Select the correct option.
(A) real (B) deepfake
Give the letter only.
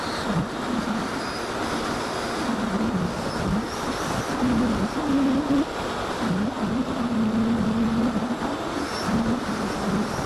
B